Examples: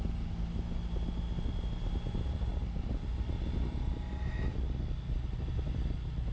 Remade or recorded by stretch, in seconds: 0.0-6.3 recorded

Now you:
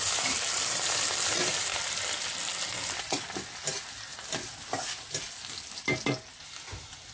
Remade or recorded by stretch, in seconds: 0.0-7.1 recorded

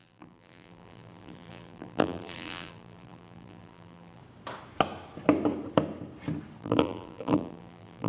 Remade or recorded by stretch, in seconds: 0.0-4.2 remade; 4.2-6.6 recorded; 6.6-8.1 remade

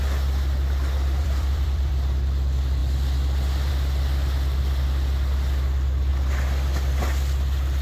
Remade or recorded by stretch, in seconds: 0.0-1.2 recorded; 1.2-1.9 remade; 1.9-7.8 recorded

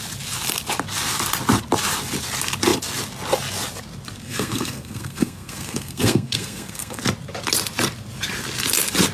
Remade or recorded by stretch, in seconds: 0.0-4.2 recorded; 4.2-7.0 remade; 7.0-9.1 recorded

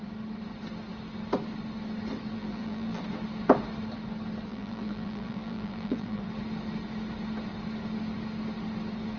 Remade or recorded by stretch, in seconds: 0.0-2.3 recorded; 2.3-3.0 remade; 3.0-4.5 recorded; 4.5-6.2 remade; 6.2-9.2 recorded

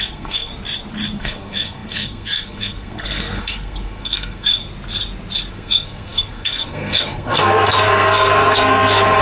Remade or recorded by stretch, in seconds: 0.0-0.5 remade; 0.5-1.2 recorded; 1.2-4.6 remade; 4.6-5.5 recorded; 5.5-9.2 remade